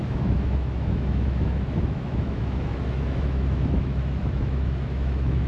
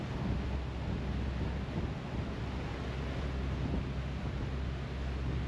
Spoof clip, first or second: first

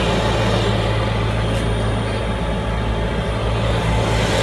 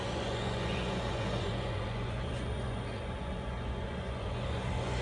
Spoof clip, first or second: second